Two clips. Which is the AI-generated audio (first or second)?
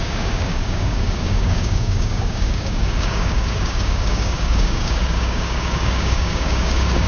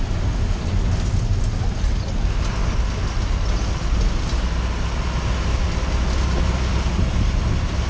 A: first